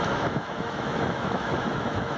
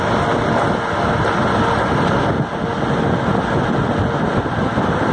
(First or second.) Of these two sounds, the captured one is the second